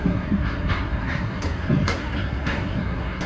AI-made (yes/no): yes